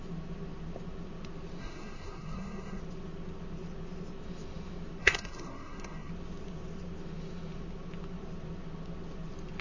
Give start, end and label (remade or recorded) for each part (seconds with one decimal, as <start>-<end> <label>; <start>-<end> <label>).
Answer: 0.0-1.6 recorded; 1.6-2.8 remade; 2.8-5.0 recorded; 5.0-6.1 remade; 6.1-9.6 recorded